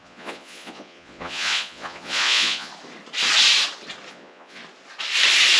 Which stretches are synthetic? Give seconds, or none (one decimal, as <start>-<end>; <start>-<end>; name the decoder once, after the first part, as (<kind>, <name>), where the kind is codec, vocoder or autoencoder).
0.0-2.7 (vocoder, Vocos); 4.1-4.6